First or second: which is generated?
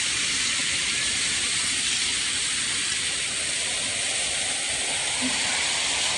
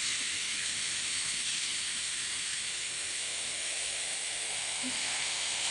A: second